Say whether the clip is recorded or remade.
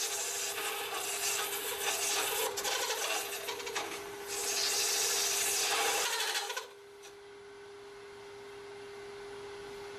recorded